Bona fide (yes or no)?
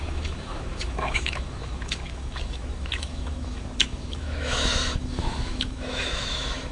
no